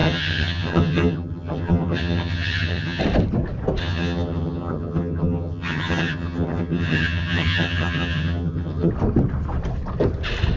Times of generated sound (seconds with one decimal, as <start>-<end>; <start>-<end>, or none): 0.0-3.0; 3.8-8.9